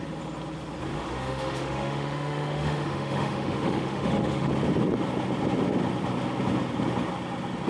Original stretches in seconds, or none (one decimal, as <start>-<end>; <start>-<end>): 0.0-0.9; 4.5-7.7